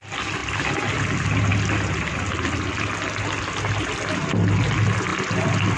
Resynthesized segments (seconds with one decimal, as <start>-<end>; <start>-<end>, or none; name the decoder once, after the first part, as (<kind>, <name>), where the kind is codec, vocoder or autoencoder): none